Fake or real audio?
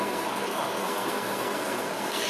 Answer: fake